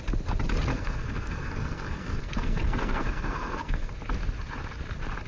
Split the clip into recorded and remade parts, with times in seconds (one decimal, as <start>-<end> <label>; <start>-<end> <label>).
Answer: 0.0-0.7 recorded; 0.7-3.9 remade; 3.9-5.3 recorded